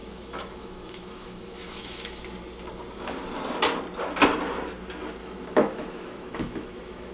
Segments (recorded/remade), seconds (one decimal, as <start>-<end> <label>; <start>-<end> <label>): 0.0-2.2 remade; 2.2-5.2 recorded; 5.2-7.1 remade